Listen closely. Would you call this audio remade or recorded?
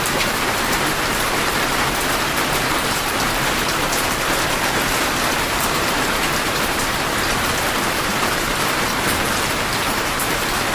remade